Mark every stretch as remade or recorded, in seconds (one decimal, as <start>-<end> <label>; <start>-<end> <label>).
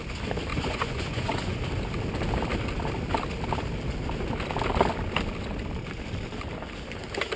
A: 0.0-0.5 recorded; 0.5-1.6 remade; 1.6-7.4 recorded